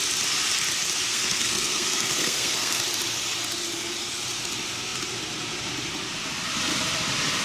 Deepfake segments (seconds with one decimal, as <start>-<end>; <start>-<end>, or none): 1.1-2.8